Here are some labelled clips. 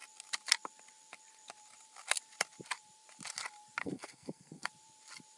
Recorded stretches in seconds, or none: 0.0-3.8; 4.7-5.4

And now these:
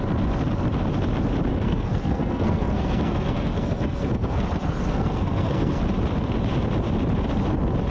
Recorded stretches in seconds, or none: 0.0-1.5; 5.8-7.9

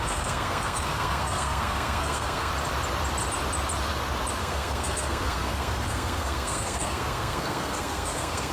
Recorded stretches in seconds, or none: 2.5-4.4

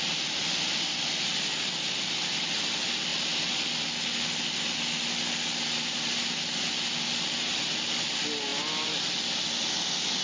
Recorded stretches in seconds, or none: 0.0-10.2

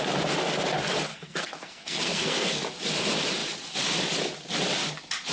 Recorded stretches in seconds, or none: 0.0-1.1; 2.6-5.3

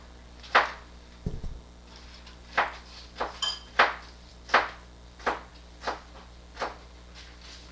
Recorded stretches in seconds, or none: 0.0-7.7

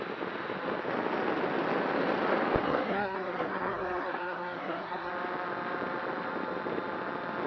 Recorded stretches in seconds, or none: 0.0-2.6; 5.1-7.5